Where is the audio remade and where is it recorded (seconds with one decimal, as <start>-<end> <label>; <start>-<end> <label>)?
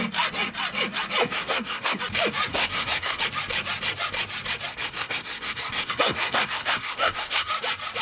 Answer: 0.0-1.2 recorded; 1.2-2.0 remade; 2.0-2.5 recorded; 2.5-3.2 remade; 3.2-4.7 recorded; 4.7-7.5 remade; 7.5-8.0 recorded